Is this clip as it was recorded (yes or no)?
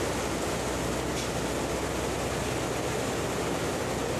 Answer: yes